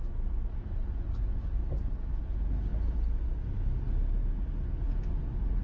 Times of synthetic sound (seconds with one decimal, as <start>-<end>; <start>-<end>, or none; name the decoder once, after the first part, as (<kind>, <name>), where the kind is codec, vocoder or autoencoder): none